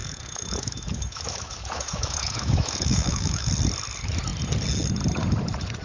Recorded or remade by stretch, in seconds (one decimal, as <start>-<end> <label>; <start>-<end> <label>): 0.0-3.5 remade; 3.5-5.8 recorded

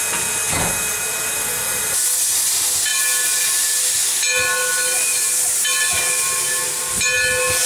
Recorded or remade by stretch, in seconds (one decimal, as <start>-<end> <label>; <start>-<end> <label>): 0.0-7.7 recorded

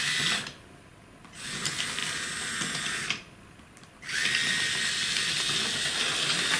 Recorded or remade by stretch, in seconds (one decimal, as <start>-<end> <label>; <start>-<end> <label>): 0.0-6.6 recorded

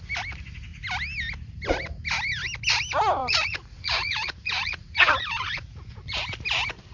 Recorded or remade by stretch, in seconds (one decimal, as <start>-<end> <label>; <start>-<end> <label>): 0.0-3.2 recorded; 3.2-6.2 remade; 6.2-6.9 recorded

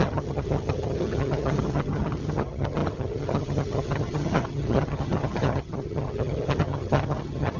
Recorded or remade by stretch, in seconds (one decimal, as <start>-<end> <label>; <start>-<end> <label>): 0.0-7.6 remade

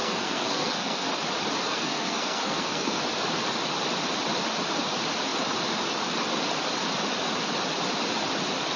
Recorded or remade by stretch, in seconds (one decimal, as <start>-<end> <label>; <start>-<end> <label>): 0.0-1.1 remade; 1.1-1.7 recorded; 1.7-3.0 remade; 3.0-8.8 recorded

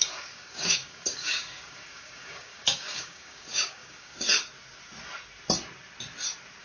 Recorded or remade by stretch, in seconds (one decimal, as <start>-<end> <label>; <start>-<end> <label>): 0.0-4.3 remade; 4.3-6.6 recorded

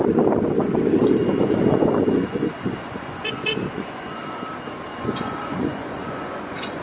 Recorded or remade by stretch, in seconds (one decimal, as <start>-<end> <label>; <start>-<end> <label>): 0.0-1.2 recorded; 1.2-4.4 remade; 4.4-4.9 recorded; 4.9-6.8 remade